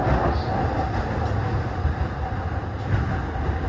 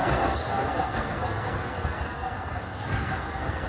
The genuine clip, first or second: first